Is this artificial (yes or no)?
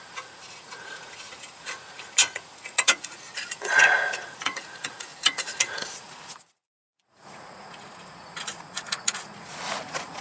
yes